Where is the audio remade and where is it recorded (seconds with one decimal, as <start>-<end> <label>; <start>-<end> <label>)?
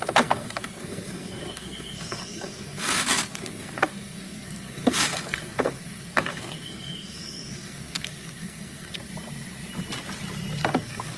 0.0-9.1 remade; 9.1-10.7 recorded; 10.7-11.2 remade